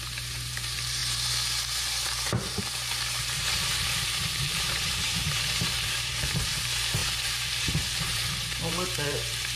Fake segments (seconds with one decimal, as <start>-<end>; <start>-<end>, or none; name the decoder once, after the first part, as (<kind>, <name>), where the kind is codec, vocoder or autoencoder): 0.0-9.6 (vocoder, BigVGAN v2)